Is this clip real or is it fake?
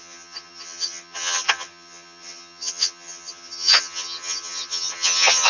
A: fake